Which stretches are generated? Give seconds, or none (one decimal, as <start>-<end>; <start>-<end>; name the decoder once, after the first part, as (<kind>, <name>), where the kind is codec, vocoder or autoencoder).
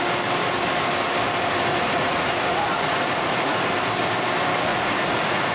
1.7-3.7 (vocoder, Vocos); 4.7-5.5